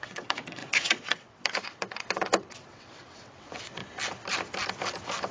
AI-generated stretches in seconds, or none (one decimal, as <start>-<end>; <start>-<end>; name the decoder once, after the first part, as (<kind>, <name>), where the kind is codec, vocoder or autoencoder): 0.0-3.8 (vocoder, WaveNeXt)

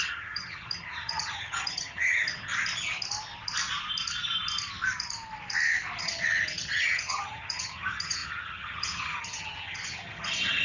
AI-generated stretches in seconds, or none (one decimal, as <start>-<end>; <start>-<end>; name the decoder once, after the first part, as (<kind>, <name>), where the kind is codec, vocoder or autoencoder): 0.0-2.5 (vocoder, HiFi-GAN); 6.0-10.6